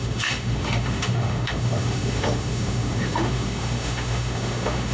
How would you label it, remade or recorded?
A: remade